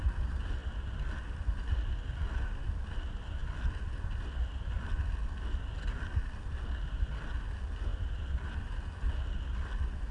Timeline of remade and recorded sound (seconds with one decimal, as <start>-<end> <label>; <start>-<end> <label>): 0.0-10.1 recorded